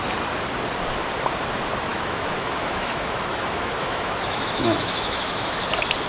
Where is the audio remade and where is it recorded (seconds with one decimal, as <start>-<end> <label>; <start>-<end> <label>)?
0.0-1.9 recorded; 1.9-5.6 remade; 5.6-6.1 recorded